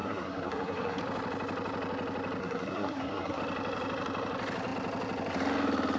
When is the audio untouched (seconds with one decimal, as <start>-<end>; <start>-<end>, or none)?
1.0-2.4; 3.4-6.0